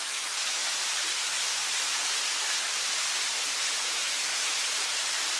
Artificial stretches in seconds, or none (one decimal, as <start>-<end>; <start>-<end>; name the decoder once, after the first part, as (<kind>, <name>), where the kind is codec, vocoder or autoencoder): 0.0-0.6 (autoencoder, DAC-VAE); 3.8-4.3